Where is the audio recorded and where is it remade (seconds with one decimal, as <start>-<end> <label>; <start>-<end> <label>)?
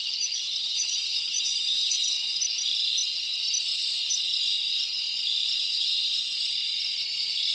0.0-2.4 remade; 2.4-7.5 recorded